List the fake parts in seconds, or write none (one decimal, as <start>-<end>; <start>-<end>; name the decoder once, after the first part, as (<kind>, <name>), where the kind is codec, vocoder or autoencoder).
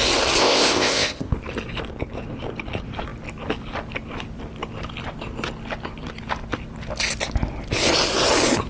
0.4-1.3 (codec, ZipCodec)